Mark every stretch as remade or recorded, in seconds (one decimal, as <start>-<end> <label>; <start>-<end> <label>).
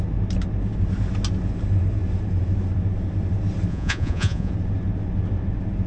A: 0.0-3.7 recorded; 3.7-4.5 remade; 4.5-5.9 recorded